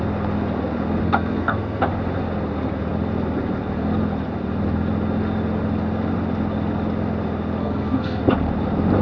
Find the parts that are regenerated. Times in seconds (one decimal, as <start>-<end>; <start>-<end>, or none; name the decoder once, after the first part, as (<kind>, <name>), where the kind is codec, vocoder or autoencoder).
1.0-1.9 (codec, SNAC); 7.6-8.2